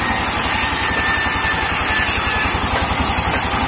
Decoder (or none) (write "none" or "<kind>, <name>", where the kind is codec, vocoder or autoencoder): none